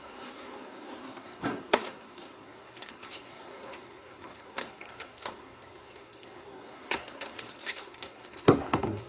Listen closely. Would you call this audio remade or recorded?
remade